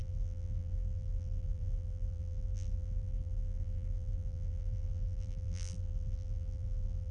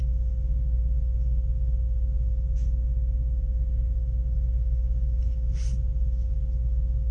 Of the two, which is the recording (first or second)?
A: second